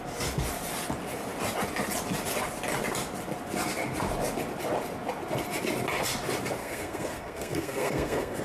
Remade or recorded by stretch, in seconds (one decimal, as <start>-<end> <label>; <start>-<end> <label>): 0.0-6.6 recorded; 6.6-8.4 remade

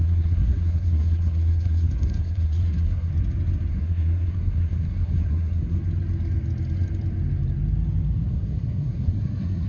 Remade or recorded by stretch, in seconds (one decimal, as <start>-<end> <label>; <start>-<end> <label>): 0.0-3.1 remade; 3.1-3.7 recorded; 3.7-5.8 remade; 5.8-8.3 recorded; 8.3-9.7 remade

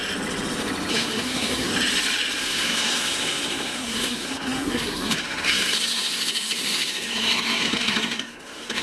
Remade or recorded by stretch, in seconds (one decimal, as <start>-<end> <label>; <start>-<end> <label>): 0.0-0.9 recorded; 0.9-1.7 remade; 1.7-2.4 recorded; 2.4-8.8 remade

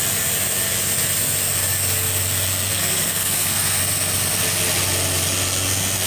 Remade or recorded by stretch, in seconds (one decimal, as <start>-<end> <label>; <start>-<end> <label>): 0.0-2.7 recorded; 2.7-3.8 remade; 3.8-6.1 recorded